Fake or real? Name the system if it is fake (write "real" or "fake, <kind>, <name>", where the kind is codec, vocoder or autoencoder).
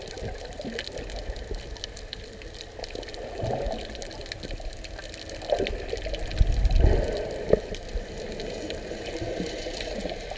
real